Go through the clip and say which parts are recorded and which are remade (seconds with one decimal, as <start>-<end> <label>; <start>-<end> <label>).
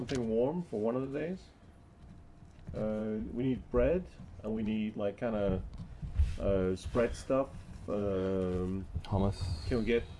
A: 0.0-0.6 recorded; 0.6-1.6 remade; 1.6-3.0 recorded; 3.0-10.2 remade